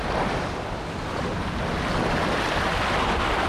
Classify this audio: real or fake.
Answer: real